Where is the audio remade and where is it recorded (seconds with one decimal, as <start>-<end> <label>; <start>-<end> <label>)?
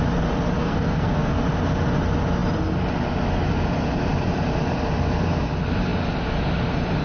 0.0-0.6 recorded; 0.6-1.4 remade; 1.4-7.0 recorded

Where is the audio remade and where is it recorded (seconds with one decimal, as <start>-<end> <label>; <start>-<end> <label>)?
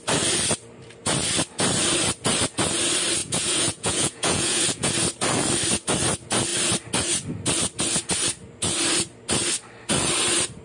0.0-3.2 recorded; 3.2-4.9 remade; 4.9-10.6 recorded